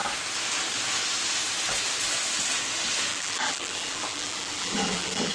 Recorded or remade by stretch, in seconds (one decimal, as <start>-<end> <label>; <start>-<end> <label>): 0.0-3.1 recorded; 3.1-5.3 remade